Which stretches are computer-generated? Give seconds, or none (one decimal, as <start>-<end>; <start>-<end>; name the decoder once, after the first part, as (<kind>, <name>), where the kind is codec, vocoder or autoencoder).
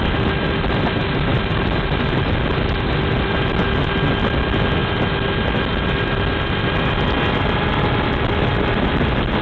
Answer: none